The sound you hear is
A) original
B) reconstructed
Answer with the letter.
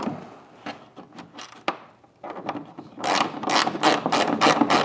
A